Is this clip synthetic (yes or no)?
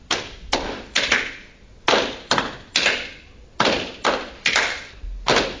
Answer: no